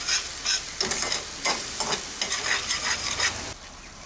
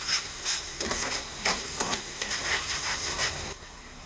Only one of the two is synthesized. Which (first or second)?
second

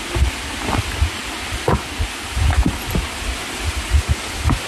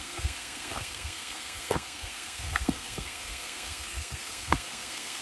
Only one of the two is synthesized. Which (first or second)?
second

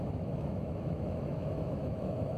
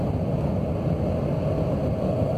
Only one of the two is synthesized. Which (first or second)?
first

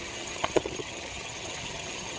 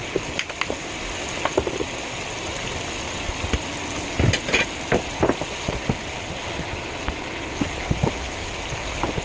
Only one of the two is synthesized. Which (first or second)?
first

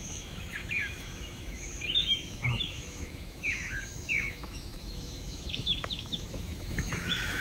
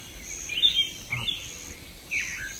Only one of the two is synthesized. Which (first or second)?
first